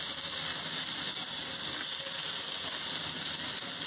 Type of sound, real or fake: real